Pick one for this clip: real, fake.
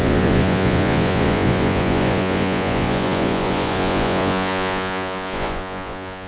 fake